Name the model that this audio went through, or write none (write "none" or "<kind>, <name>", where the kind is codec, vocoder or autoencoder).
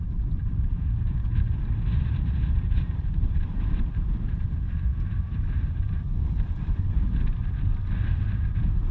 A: vocoder, BigVGAN v2